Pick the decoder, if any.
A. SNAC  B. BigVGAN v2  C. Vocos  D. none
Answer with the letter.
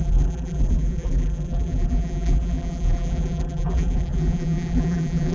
B